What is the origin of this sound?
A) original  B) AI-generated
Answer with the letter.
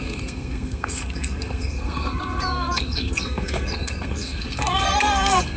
B